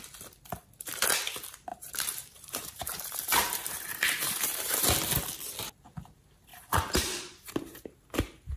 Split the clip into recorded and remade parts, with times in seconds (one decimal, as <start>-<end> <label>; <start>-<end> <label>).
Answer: 0.0-1.7 recorded; 1.7-4.8 remade; 4.8-6.5 recorded; 6.5-8.6 remade